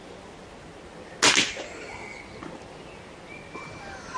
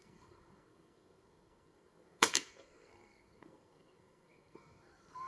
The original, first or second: first